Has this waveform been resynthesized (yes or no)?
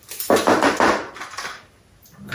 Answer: no